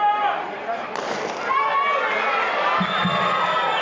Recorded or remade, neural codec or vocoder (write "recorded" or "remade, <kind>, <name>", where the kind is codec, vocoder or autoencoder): recorded